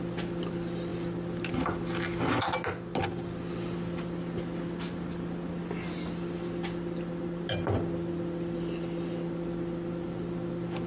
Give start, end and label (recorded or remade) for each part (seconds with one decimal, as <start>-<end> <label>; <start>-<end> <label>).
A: 0.0-10.9 recorded